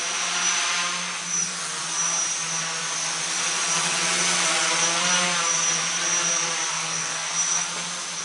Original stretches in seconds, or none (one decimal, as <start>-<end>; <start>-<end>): 0.0-6.7; 7.3-8.2